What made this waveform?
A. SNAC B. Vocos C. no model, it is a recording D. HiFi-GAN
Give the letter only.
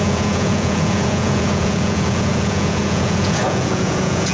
B